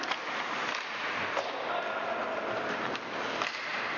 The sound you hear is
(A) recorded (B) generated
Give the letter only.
A